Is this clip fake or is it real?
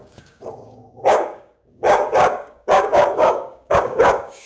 fake